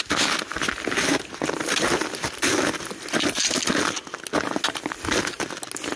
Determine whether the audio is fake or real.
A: real